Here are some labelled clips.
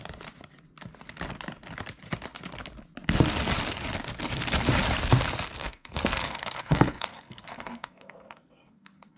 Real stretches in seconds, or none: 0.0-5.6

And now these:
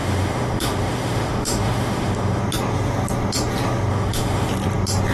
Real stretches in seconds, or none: 2.4-3.9; 4.5-5.1

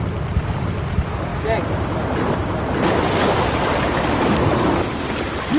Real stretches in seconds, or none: 0.0-5.6

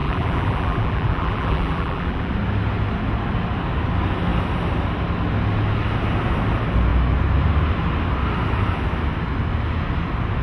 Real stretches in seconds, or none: 2.3-10.4

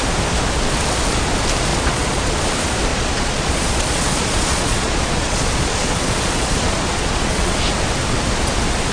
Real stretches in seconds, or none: 0.0-1.7; 2.4-2.9; 7.6-8.9